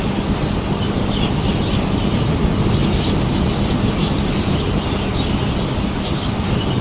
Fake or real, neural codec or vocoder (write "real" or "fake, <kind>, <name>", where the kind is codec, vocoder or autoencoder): real